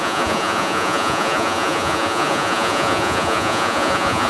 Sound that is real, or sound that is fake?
fake